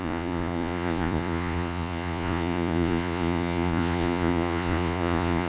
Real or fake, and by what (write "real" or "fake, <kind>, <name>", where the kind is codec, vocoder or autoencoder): fake, vocoder, Vocos